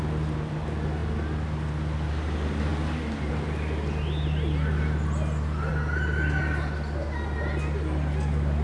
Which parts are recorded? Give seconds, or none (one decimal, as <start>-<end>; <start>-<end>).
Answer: 0.0-8.6